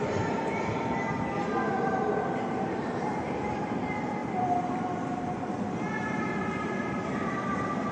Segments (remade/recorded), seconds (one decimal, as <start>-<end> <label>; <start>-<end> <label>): 0.0-7.9 recorded